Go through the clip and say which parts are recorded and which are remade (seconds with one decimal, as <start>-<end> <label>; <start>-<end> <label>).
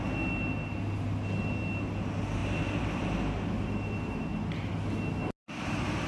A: 0.0-6.1 recorded